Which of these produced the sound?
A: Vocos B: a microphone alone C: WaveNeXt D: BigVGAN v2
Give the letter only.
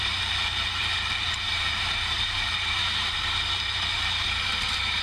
D